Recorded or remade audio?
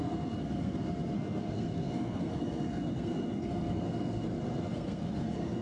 remade